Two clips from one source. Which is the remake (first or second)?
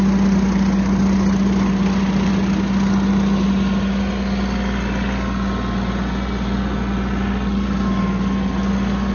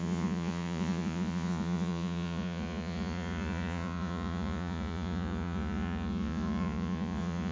second